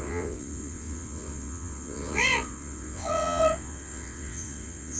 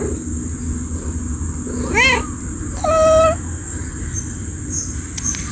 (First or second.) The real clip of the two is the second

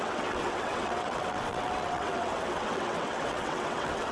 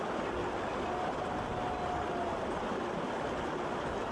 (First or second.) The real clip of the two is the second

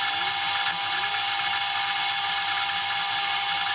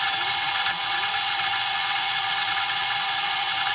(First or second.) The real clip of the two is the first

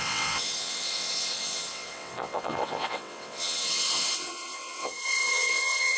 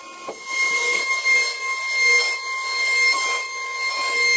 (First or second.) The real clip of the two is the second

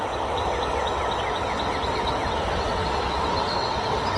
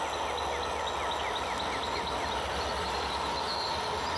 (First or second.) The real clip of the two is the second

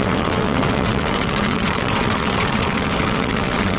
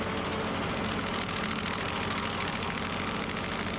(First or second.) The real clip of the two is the second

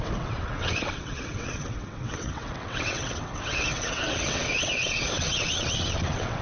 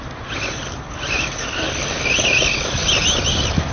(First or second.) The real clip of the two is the second